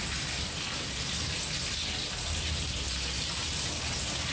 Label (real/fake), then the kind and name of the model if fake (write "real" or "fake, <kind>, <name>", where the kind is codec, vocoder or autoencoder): real